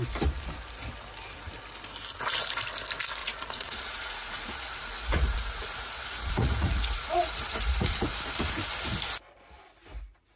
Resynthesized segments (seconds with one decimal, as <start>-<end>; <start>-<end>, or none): 3.2-8.1